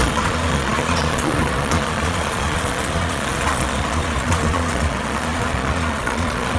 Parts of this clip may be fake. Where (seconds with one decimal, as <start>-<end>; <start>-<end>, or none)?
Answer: 0.0-6.6